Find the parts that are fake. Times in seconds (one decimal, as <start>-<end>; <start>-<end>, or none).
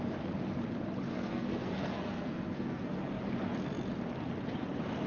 1.1-3.2